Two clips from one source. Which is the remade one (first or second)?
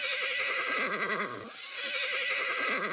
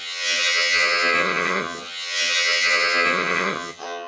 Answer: second